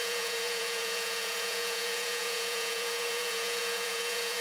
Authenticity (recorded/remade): remade